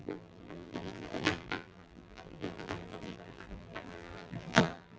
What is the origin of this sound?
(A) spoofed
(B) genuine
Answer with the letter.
A